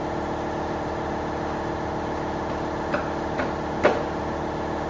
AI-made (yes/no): no